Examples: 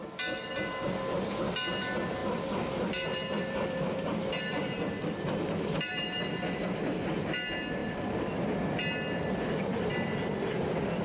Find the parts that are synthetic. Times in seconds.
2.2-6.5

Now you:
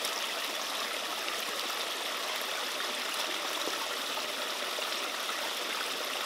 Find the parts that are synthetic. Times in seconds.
0.0-1.1; 4.9-6.3

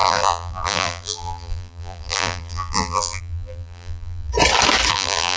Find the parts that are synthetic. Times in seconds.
0.0-4.3; 4.9-5.4

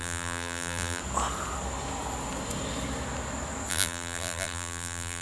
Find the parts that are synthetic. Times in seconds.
0.0-1.0; 3.7-5.2

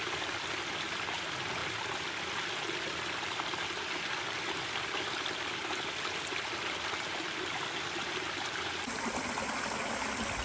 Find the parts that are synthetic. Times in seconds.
none